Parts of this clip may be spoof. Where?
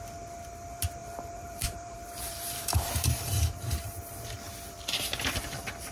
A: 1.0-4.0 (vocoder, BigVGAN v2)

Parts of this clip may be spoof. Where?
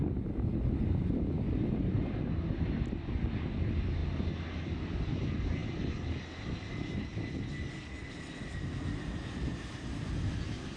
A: none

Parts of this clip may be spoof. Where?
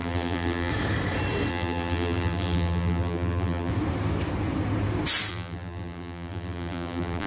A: 0.0-0.7 (vocoder, BigVGAN v2); 1.5-3.7; 5.3-7.3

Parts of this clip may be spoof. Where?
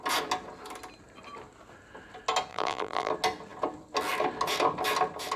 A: 2.5-3.1 (vocoder, BigVGAN v2)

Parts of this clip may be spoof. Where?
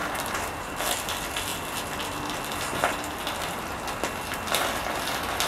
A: 0.0-0.7 (vocoder, BigVGAN v2)